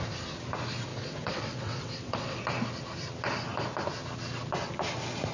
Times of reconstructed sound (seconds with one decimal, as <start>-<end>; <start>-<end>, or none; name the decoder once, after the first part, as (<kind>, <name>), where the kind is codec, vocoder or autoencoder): 0.9-2.4 (vocoder, WaveNeXt)